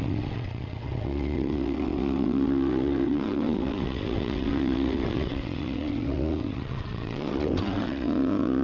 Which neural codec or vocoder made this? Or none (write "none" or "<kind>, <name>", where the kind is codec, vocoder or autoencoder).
vocoder, WaveNeXt